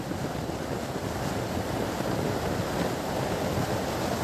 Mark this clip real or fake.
real